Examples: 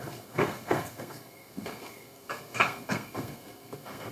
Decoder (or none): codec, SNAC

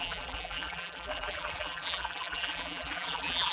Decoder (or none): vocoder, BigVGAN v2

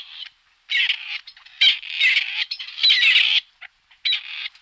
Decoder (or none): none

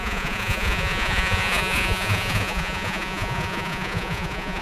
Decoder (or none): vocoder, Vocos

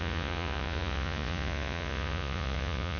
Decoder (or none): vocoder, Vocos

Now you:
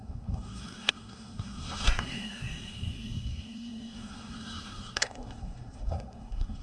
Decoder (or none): codec, SNAC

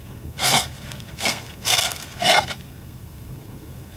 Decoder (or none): codec, SNAC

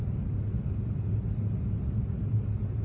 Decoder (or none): none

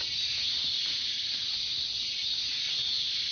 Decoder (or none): none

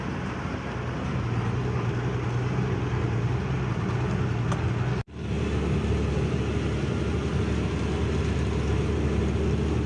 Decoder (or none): none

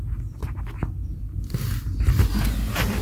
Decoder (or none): none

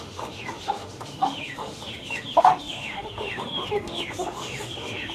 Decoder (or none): autoencoder, DAC-VAE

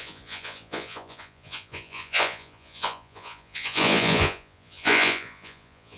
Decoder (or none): vocoder, Vocos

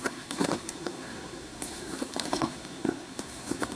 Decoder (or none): codec, SNAC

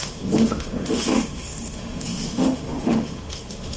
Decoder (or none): autoencoder, DAC-VAE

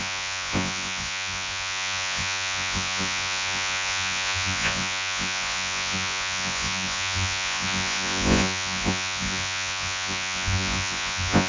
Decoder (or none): vocoder, Vocos